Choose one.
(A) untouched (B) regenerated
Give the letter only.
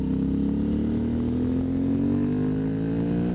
A